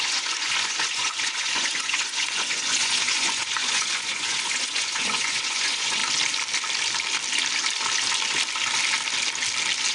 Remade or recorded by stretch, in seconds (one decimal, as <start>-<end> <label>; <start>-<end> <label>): 0.0-6.0 remade; 6.0-9.9 recorded